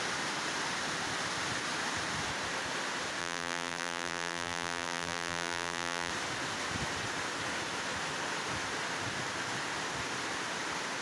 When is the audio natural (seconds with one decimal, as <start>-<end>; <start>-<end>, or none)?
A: 0.0-3.2; 6.1-11.0